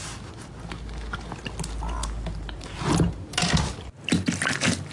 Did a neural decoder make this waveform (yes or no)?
no